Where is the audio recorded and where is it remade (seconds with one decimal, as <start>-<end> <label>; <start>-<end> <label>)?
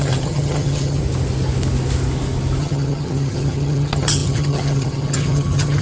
0.0-1.0 remade; 1.0-2.6 recorded; 2.6-5.8 remade